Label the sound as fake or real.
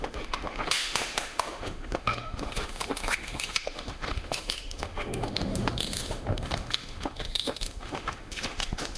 fake